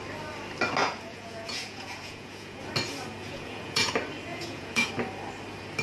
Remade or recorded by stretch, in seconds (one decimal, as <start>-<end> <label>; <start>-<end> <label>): 0.0-0.8 recorded; 0.8-2.6 remade; 2.6-3.2 recorded; 3.2-3.9 remade; 3.9-4.3 recorded; 4.3-4.9 remade; 4.9-5.8 recorded